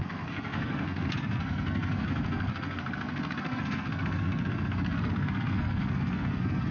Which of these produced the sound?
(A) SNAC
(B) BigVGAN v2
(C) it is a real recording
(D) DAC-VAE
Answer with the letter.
A